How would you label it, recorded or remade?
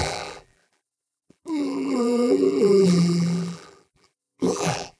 remade